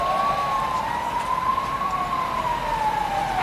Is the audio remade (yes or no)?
no